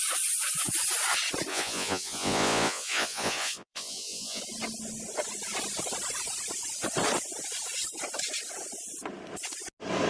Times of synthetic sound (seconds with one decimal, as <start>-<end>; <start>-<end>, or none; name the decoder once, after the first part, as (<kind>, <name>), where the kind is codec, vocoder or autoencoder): 1.5-4.4 (vocoder, Vocos)